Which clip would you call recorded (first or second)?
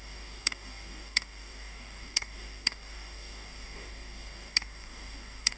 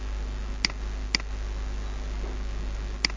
second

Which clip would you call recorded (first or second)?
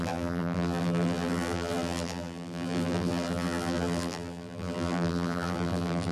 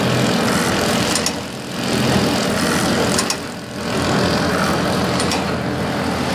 second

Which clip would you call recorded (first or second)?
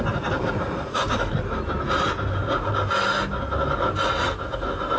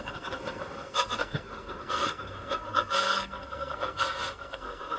first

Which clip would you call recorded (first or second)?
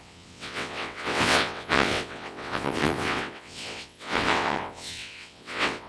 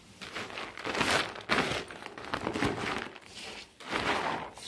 second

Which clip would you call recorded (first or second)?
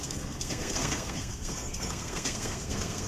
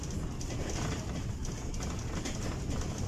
second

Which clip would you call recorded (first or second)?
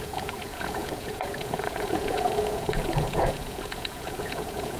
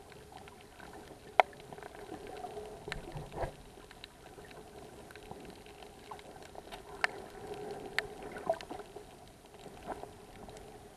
second